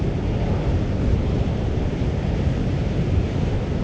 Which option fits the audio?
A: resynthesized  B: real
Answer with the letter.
B